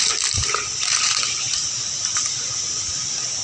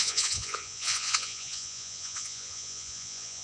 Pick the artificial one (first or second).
second